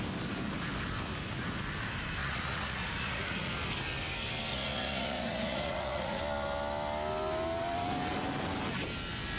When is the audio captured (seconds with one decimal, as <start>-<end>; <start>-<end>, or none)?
0.0-2.2; 3.5-4.5; 6.2-9.4